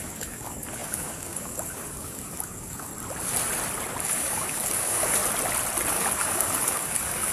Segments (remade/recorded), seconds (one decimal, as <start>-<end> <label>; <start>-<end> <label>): 0.0-2.9 remade; 2.9-4.0 recorded; 4.0-5.2 remade; 5.2-5.9 recorded; 5.9-7.3 remade